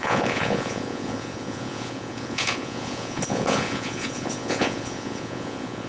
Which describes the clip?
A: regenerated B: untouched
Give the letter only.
A